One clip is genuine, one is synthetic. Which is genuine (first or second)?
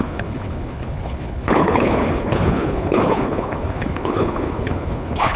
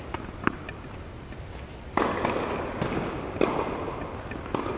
second